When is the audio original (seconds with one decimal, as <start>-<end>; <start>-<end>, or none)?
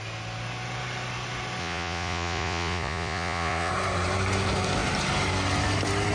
0.0-1.6; 3.7-6.1